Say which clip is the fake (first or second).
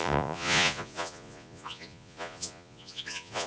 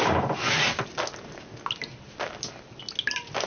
first